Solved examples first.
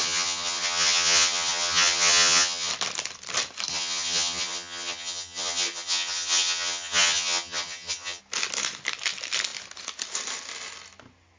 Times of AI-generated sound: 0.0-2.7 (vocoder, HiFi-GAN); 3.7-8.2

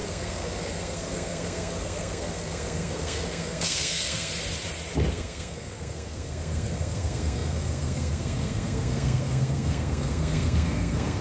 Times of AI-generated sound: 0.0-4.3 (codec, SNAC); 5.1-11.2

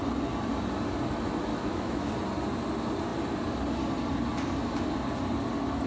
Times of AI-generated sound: 1.5-2.1 (autoencoder, DAC-VAE)